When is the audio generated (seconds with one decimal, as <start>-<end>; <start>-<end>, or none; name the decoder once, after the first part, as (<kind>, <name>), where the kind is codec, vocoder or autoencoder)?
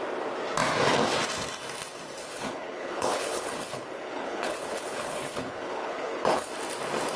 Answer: 2.2-6.5 (codec, HILCodec)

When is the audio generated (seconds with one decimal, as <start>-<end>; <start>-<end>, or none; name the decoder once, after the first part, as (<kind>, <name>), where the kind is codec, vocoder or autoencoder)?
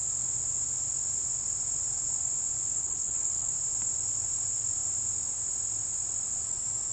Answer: 2.8-3.5 (codec, HILCodec)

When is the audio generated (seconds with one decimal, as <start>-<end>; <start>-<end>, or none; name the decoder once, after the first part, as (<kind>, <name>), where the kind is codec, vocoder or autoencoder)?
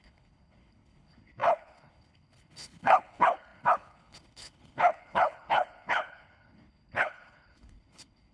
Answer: 0.0-8.3 (codec, HILCodec)